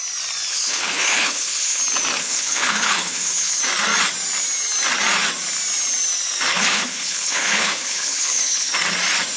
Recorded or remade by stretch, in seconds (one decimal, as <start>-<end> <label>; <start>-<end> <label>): 0.0-0.5 recorded; 0.5-1.8 remade; 1.8-2.2 recorded; 2.2-3.6 remade; 3.6-6.5 recorded; 6.5-8.7 remade; 8.7-9.4 recorded